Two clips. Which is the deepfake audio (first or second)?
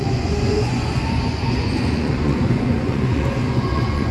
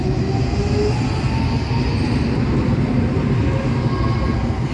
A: first